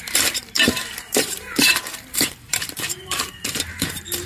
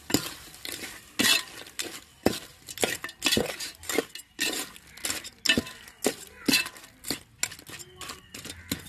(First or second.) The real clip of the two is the second